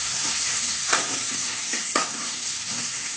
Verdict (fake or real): fake